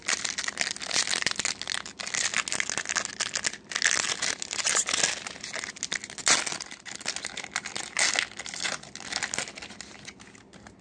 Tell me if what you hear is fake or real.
real